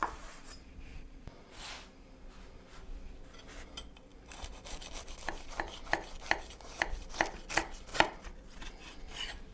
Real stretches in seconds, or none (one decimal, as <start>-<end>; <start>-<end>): 0.5-0.9; 1.7-7.9; 9.0-9.5